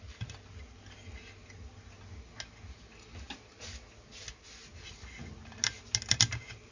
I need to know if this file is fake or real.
real